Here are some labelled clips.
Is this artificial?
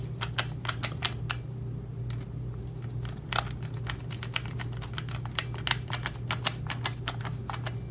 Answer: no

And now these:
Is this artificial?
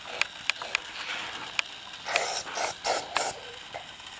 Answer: no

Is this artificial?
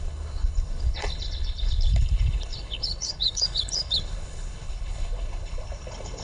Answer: yes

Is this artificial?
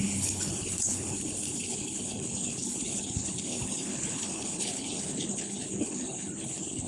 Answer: yes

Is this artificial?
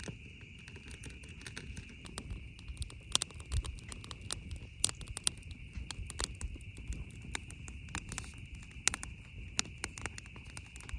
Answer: no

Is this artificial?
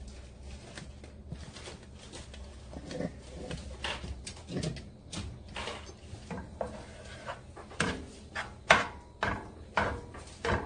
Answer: no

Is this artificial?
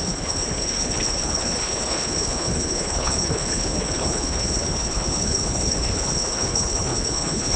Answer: yes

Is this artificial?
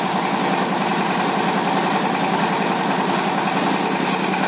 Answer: no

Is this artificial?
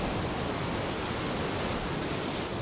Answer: no